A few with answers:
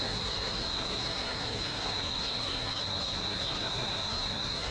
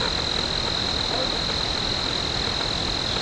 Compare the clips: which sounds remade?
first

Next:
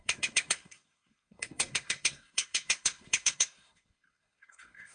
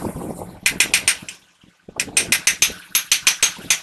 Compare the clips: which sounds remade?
first